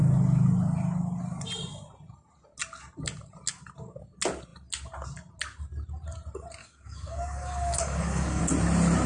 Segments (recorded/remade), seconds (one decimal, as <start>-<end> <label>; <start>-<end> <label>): 0.0-6.6 recorded; 6.6-8.4 remade; 8.4-9.1 recorded